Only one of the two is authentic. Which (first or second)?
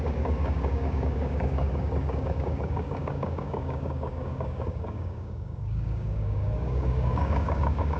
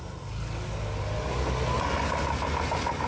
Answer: second